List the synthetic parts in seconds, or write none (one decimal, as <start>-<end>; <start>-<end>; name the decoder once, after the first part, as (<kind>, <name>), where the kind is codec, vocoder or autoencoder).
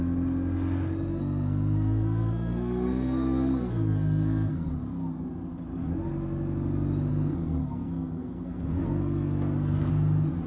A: 1.1-4.7 (codec, SNAC); 7.1-9.9